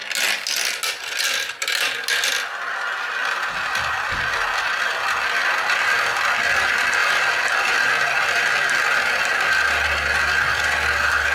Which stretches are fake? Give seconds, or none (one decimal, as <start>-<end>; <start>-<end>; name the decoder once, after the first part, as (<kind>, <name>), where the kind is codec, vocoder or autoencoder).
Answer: none